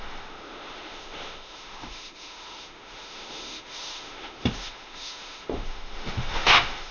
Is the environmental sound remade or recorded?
remade